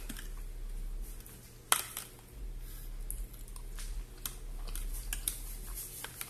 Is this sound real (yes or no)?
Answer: yes